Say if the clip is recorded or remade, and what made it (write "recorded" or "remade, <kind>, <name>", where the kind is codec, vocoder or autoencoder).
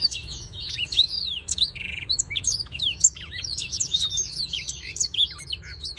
remade, autoencoder, DAC-VAE